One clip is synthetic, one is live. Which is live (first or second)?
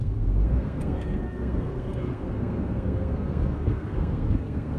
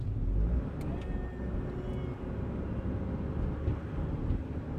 second